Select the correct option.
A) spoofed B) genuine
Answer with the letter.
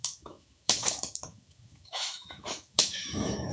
A